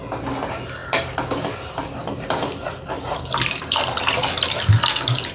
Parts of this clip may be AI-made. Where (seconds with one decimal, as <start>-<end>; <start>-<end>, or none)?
0.8-4.0

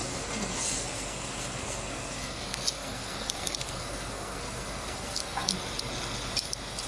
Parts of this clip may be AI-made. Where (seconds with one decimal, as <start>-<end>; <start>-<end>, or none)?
0.0-5.5

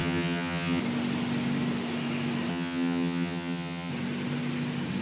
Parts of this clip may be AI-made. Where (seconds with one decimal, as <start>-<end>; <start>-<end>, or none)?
0.0-0.8; 2.5-3.9